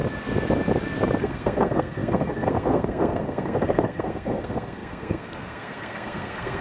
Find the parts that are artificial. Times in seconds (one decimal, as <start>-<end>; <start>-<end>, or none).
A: 1.2-6.6